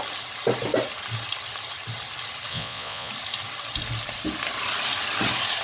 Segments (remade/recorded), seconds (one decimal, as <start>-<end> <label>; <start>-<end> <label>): 0.0-2.5 recorded; 2.5-3.1 remade; 3.1-5.6 recorded